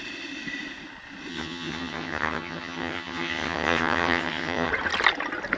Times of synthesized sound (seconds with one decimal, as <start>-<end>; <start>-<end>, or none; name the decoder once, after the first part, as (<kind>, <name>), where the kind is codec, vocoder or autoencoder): 1.3-4.7 (vocoder, HiFi-GAN)